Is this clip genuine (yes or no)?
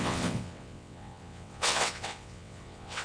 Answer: no